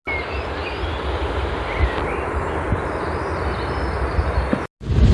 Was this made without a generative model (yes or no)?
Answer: yes